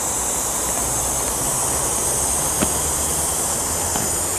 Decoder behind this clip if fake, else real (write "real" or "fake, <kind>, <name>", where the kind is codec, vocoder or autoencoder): real